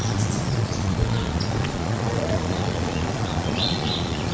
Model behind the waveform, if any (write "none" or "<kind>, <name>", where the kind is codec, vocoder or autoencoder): vocoder, Vocos